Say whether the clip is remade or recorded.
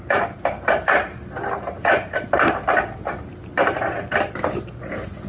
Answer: recorded